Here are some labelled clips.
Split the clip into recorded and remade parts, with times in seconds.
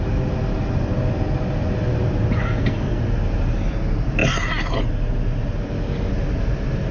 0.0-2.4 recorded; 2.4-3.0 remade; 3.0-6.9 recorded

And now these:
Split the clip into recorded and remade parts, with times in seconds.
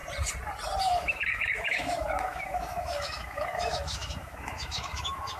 0.0-0.8 recorded; 0.8-5.4 remade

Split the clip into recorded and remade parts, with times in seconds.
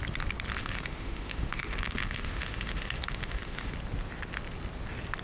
0.0-0.6 recorded; 0.6-3.7 remade; 3.7-5.2 recorded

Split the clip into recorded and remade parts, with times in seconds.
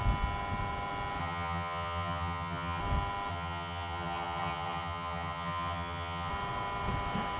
0.0-1.2 recorded; 1.2-2.8 remade; 2.8-3.3 recorded; 3.3-6.3 remade; 6.3-7.4 recorded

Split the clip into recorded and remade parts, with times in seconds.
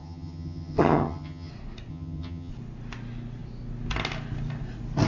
0.0-1.5 remade; 1.5-1.9 recorded; 1.9-2.5 remade; 2.5-5.1 recorded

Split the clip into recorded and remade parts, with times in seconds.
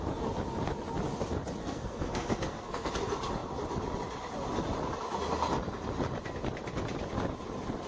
0.0-1.6 recorded; 1.6-2.9 remade; 2.9-7.9 recorded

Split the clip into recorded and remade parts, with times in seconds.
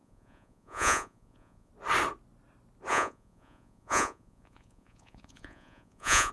0.0-1.7 remade; 1.7-2.9 recorded; 2.9-6.3 remade